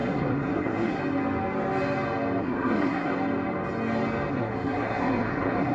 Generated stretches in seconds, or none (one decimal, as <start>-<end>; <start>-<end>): 0.0-1.0; 2.4-3.1; 4.3-5.7